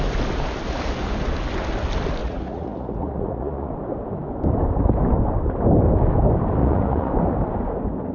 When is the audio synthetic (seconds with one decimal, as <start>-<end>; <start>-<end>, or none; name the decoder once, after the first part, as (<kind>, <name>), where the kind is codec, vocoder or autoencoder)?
2.2-3.7 (vocoder, Vocos); 6.6-7.1